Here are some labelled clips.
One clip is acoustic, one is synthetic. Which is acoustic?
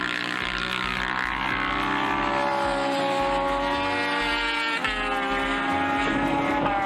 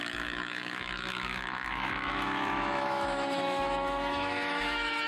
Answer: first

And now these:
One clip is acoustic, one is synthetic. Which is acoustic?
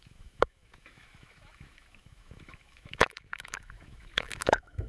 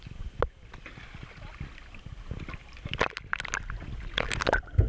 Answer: second